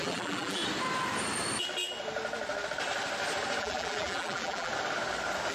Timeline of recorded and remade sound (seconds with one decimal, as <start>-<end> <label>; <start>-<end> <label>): 0.0-0.6 remade; 0.6-3.6 recorded; 3.6-4.7 remade; 4.7-5.5 recorded